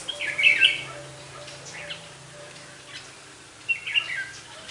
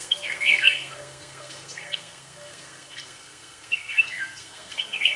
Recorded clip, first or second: first